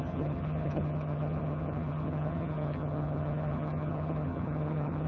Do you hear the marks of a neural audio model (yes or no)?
yes